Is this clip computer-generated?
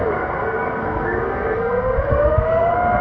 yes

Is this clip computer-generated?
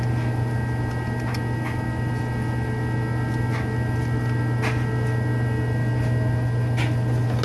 no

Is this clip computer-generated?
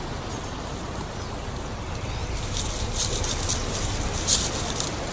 no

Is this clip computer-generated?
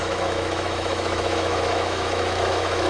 yes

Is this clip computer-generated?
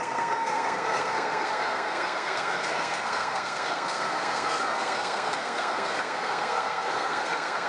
yes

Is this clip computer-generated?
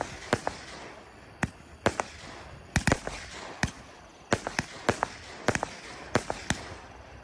no